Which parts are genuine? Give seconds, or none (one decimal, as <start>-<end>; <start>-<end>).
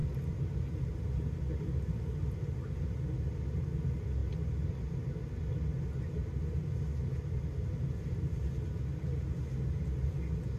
0.0-10.6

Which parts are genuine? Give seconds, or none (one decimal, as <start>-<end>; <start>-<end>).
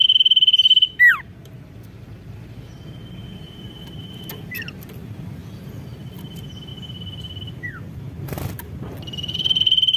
0.0-10.0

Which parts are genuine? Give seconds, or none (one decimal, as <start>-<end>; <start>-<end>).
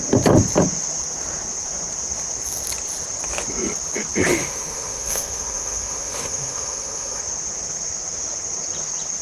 0.0-4.3; 7.2-9.2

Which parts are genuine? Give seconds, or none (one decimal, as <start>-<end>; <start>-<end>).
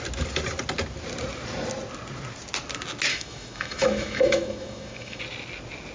0.0-3.1; 5.2-5.9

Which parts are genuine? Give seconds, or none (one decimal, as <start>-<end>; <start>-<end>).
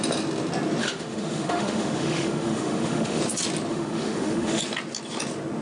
0.0-0.8; 3.2-3.7; 4.6-5.6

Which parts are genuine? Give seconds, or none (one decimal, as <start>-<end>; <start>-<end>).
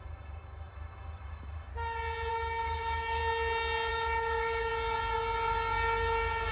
1.7-2.3; 3.2-3.9; 4.7-6.5